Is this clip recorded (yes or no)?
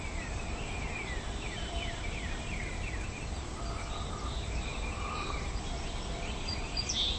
no